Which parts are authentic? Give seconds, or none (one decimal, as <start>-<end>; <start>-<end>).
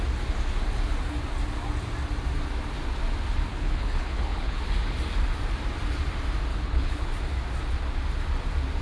0.0-3.5; 4.6-6.5; 7.1-8.8